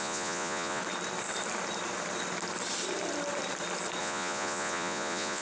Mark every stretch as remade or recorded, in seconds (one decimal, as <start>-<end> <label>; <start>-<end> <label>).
0.0-0.8 remade; 0.8-4.0 recorded; 4.0-5.4 remade